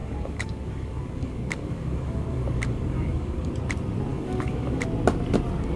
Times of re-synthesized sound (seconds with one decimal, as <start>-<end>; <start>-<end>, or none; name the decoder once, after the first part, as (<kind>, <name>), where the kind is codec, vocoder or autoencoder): 0.0-3.5 (codec, DAC); 4.1-4.8